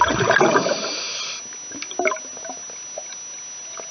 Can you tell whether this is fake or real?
real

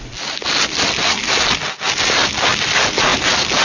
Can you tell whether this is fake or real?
real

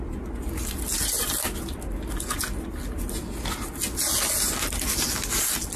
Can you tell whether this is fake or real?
real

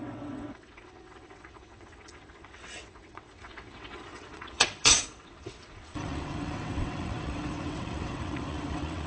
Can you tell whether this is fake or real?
fake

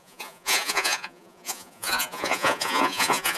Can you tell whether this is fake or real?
fake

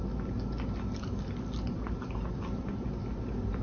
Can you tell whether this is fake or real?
real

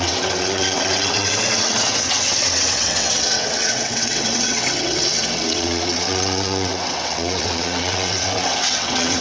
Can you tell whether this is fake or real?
fake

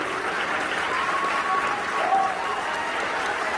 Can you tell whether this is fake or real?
real